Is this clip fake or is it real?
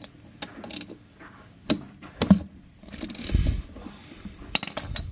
real